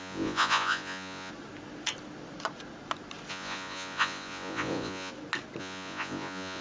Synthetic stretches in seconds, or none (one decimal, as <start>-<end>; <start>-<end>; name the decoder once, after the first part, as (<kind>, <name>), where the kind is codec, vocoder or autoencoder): 0.0-1.3 (vocoder, Vocos); 3.3-5.1; 5.6-6.6